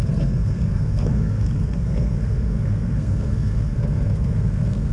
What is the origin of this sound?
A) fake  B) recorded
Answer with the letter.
A